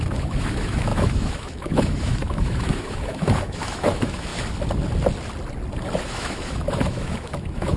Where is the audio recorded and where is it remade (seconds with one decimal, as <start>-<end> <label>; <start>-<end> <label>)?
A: 0.0-4.3 remade; 4.3-6.0 recorded; 6.0-7.8 remade